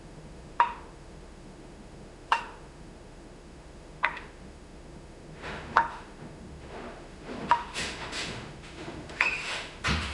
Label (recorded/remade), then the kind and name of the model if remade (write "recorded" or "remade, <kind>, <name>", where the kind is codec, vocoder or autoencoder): remade, autoencoder, DAC-VAE